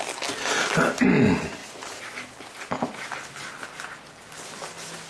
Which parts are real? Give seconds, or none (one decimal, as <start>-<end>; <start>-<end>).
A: 0.0-5.1